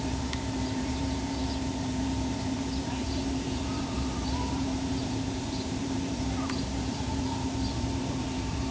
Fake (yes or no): yes